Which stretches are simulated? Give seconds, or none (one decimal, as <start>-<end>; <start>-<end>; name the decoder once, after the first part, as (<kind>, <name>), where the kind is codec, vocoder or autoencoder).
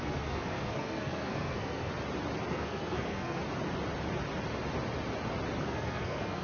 0.0-1.9 (codec, SNAC); 2.5-3.4; 5.6-6.4